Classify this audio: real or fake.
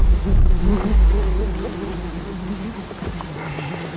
real